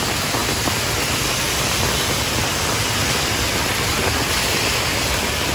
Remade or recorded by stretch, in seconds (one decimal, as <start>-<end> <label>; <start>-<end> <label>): 0.0-5.5 recorded